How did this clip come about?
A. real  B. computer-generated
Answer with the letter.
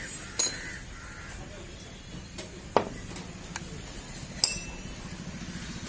A